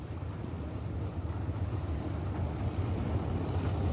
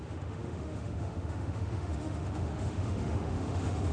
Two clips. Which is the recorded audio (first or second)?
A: first